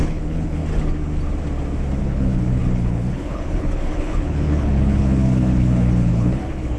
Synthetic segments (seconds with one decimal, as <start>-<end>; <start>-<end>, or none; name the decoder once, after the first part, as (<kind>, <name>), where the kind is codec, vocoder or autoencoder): 0.0-0.6 (codec, HILCodec); 2.0-6.8